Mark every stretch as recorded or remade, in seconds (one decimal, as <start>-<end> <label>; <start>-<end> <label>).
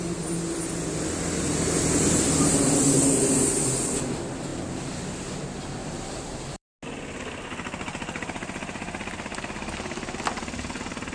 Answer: 0.0-5.8 recorded; 5.8-6.7 remade; 6.7-11.1 recorded